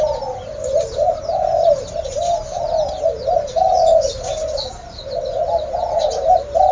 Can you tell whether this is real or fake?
real